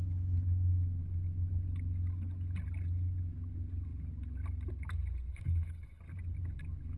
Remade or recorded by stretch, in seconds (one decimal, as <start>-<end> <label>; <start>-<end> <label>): 0.0-5.3 recorded; 5.3-6.0 remade; 6.0-7.0 recorded